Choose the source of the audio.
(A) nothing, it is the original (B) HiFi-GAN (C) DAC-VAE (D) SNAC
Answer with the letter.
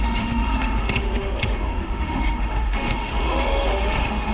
C